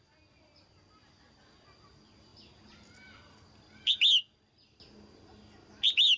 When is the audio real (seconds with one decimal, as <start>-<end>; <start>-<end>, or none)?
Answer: 0.0-6.2